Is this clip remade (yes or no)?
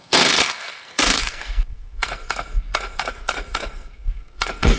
yes